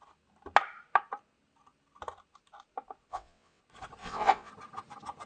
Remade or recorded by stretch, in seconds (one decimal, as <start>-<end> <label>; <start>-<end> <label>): 0.0-3.1 recorded; 3.1-3.6 remade; 3.6-4.0 recorded; 4.0-4.5 remade; 4.5-5.3 recorded